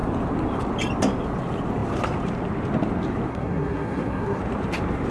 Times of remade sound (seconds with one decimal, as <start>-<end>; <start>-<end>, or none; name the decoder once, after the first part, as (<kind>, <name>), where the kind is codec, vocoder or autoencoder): 3.3-4.4 (codec, SNAC)